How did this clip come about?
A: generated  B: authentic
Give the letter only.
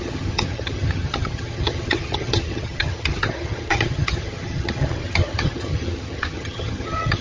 A